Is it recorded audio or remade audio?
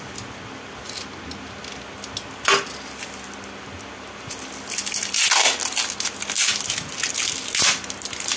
recorded